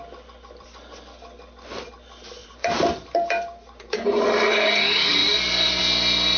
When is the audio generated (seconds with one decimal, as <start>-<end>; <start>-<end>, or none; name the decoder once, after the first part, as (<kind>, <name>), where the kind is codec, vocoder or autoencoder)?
2.4-4.2 (vocoder, BigVGAN v2); 5.2-5.8